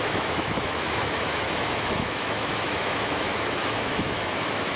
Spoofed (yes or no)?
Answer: yes